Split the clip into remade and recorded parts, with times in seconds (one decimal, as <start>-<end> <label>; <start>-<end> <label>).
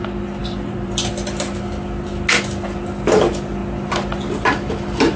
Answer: 0.0-0.4 recorded; 0.4-1.1 remade; 1.1-5.2 recorded